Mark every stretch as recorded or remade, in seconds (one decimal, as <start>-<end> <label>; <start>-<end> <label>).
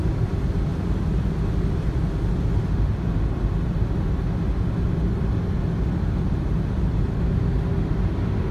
0.0-8.5 recorded